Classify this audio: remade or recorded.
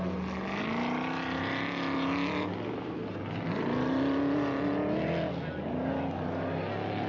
recorded